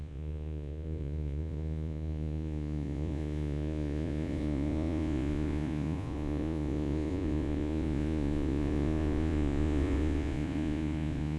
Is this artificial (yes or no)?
yes